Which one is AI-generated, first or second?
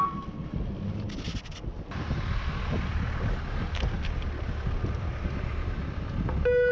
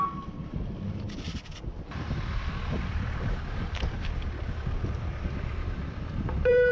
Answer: second